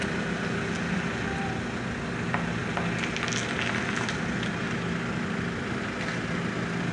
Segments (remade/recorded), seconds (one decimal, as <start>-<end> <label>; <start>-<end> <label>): 0.0-6.9 recorded

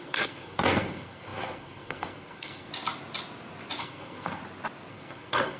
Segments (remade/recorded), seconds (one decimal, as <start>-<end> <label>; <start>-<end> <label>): 0.0-2.7 remade; 2.7-3.8 recorded; 3.8-4.4 remade; 4.4-4.9 recorded; 4.9-5.6 remade

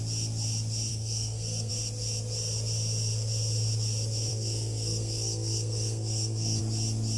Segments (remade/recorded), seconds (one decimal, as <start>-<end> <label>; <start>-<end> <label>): 0.0-0.9 recorded; 0.9-1.7 remade; 1.7-4.3 recorded; 4.3-6.6 remade; 6.6-7.2 recorded

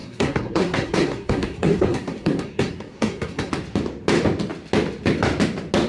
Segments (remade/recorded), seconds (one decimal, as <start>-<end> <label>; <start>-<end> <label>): 0.0-3.5 remade; 3.5-5.9 recorded

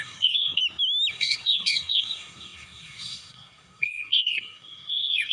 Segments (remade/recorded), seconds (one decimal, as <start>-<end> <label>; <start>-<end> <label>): 0.0-0.6 remade; 0.6-1.1 recorded; 1.1-5.3 remade

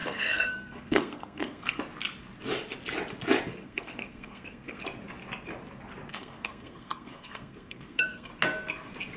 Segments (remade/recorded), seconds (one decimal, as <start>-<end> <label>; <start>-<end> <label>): 0.0-1.8 remade; 1.8-3.6 recorded; 3.6-4.8 remade; 4.8-6.1 recorded; 6.1-8.3 remade; 8.3-9.2 recorded